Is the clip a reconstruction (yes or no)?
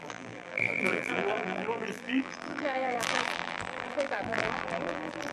yes